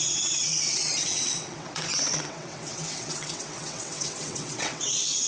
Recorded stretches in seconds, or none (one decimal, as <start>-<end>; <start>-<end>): none